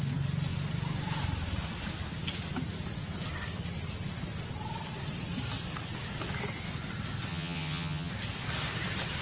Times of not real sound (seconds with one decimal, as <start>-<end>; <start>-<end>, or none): 7.3-8.1